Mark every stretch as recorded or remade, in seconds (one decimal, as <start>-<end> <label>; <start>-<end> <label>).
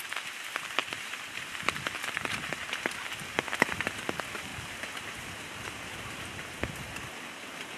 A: 0.0-0.8 recorded; 0.8-3.3 remade; 3.3-7.8 recorded